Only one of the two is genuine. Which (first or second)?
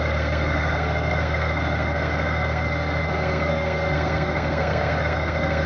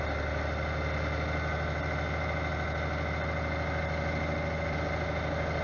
second